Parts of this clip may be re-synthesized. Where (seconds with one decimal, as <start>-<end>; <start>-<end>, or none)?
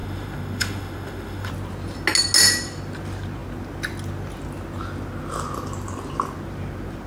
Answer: 0.0-1.5